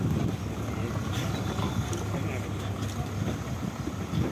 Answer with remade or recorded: recorded